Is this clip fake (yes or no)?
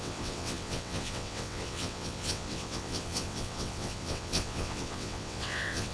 yes